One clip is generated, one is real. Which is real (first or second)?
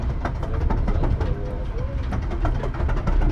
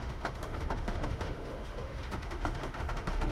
first